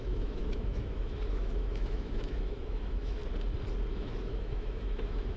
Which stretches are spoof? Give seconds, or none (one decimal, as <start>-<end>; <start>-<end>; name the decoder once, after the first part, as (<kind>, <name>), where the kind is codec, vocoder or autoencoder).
0.0-3.2 (autoencoder, DAC-VAE); 3.9-5.4